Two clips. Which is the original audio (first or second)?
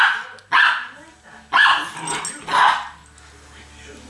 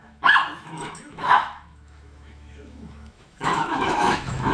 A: first